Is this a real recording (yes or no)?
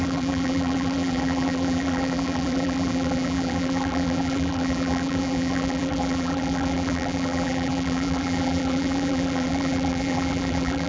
no